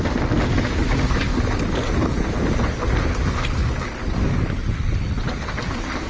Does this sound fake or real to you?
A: real